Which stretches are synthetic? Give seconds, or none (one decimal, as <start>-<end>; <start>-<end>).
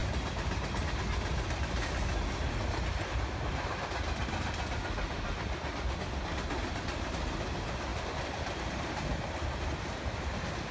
none